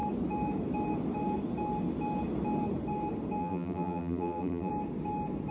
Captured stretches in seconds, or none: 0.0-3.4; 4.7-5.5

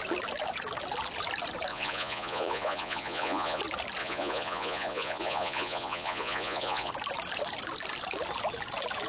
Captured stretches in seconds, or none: 0.0-1.7; 3.6-4.0; 6.9-9.1

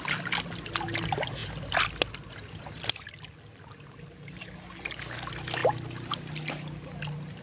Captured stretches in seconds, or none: 0.0-7.4